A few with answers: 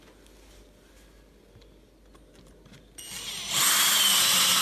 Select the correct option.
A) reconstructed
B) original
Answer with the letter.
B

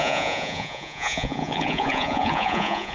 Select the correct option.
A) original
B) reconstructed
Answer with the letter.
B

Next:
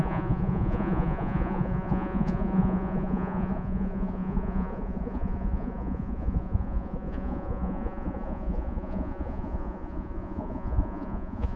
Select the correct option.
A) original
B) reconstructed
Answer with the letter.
B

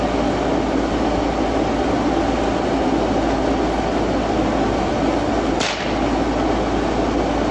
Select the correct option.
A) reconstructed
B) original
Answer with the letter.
B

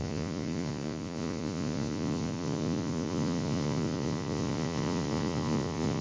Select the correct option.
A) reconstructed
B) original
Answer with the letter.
A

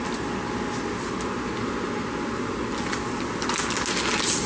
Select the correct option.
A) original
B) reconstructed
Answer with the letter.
A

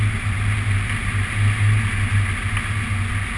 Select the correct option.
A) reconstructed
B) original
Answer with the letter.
B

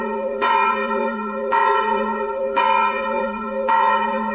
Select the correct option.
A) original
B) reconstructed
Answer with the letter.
B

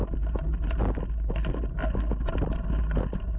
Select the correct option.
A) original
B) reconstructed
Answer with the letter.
A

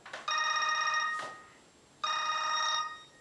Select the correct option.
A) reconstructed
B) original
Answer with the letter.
B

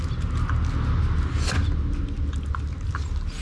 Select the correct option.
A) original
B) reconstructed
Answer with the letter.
A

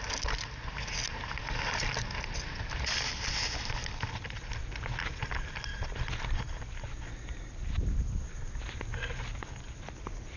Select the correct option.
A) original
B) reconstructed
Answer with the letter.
A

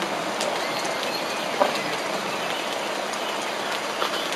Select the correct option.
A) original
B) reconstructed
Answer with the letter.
A